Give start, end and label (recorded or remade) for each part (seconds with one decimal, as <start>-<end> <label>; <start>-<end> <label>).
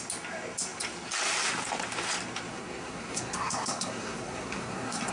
0.0-2.5 recorded; 2.5-5.1 remade